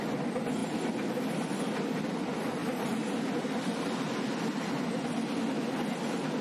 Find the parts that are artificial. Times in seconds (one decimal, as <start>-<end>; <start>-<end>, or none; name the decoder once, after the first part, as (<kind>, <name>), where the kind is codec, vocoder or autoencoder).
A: none